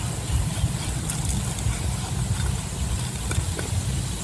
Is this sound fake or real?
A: real